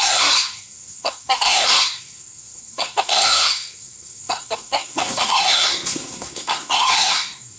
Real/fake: fake